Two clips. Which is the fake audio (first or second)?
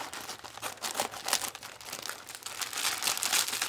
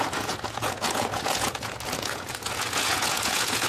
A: second